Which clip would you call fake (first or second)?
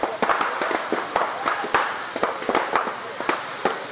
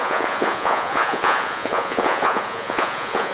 second